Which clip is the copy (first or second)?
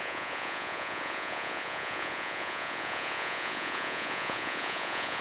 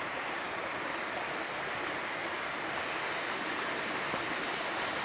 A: first